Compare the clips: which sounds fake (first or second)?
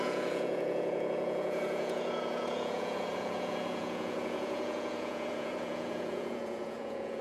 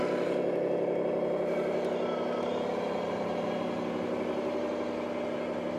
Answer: first